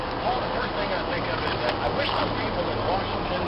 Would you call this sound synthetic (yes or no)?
no